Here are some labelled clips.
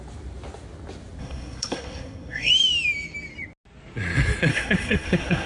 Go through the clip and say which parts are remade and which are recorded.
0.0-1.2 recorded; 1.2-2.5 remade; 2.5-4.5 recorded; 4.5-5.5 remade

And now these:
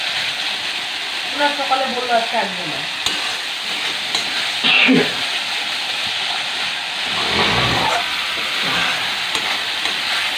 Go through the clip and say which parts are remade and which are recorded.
0.0-10.4 recorded

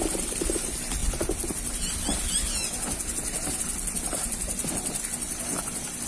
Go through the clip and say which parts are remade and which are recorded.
0.0-6.1 recorded